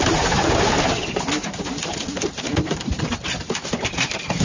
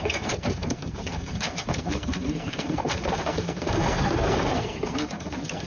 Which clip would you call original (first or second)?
first